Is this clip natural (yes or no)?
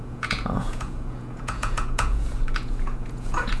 no